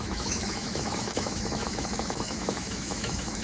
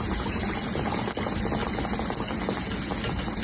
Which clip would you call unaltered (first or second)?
second